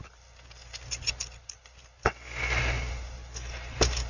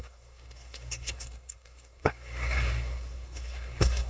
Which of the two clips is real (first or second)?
first